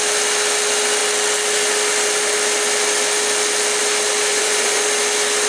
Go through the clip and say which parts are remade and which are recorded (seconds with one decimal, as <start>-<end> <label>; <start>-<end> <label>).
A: 0.0-4.3 recorded; 4.3-4.8 remade; 4.8-5.5 recorded